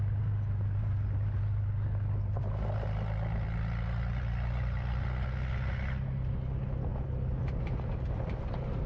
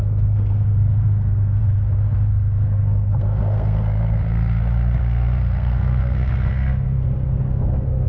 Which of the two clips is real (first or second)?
first